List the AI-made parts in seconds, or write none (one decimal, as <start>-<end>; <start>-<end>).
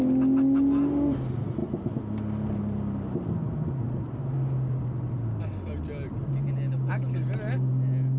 none